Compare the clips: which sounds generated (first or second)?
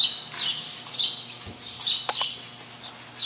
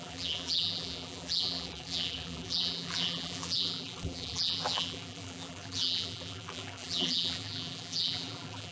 second